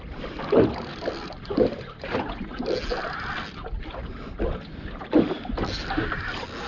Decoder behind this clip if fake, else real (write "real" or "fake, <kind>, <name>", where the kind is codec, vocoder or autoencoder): real